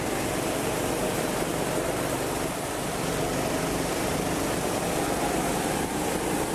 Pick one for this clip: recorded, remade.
remade